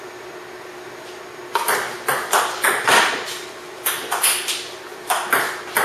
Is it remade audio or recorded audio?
recorded